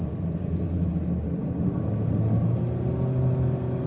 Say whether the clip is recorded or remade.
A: recorded